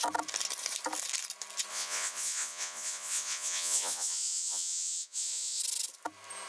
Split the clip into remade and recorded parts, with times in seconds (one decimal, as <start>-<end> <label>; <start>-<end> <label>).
0.0-1.7 recorded; 1.7-5.6 remade; 5.6-6.5 recorded